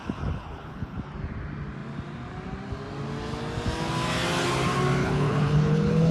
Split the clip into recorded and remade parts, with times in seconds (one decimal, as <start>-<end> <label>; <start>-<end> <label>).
0.0-1.0 remade; 1.0-5.0 recorded; 5.0-6.1 remade